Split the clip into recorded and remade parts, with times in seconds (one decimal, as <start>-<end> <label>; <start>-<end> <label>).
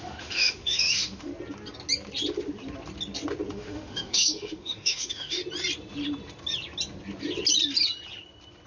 0.0-1.3 remade; 1.3-3.5 recorded; 3.5-5.4 remade; 5.4-8.7 recorded